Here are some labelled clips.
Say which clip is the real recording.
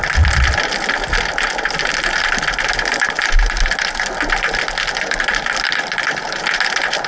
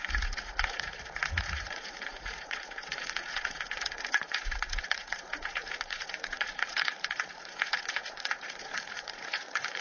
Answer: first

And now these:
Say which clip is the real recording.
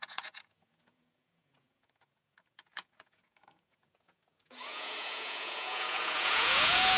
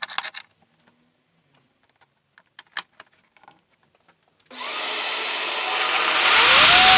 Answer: second